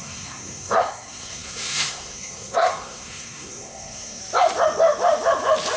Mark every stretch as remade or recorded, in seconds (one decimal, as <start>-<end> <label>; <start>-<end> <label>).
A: 0.0-4.2 remade; 4.2-5.8 recorded